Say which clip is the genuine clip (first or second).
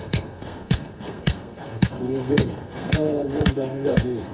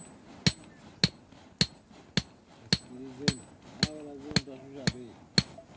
second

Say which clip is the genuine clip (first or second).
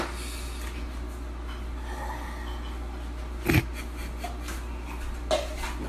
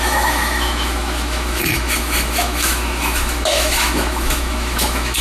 first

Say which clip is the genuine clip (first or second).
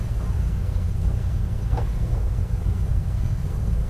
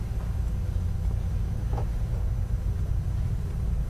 second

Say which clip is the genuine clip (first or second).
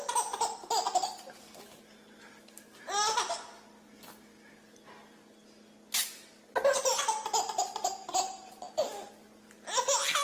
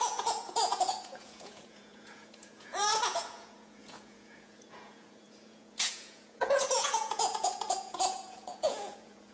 first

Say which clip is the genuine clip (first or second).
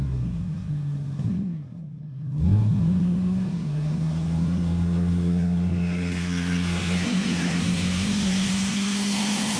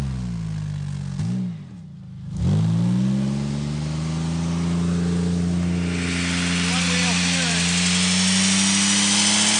second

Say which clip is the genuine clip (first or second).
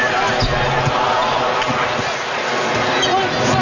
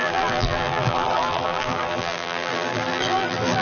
first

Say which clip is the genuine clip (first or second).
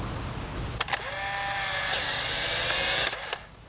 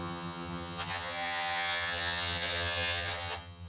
first